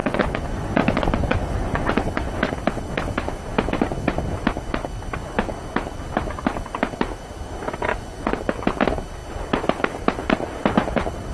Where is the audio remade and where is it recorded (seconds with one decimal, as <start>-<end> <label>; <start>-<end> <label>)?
0.0-2.4 remade; 2.4-7.9 recorded; 7.9-8.4 remade; 8.4-11.3 recorded